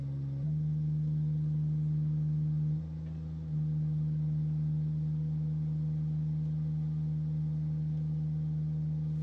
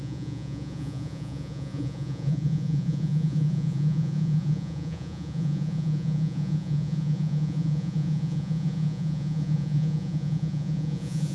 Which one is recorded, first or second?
first